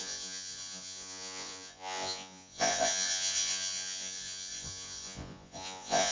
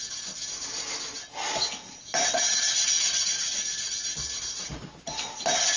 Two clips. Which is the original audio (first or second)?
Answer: second